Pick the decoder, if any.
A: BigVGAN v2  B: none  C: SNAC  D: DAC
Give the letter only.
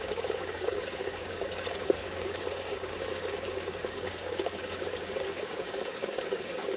D